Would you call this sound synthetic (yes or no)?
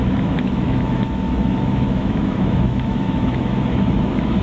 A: yes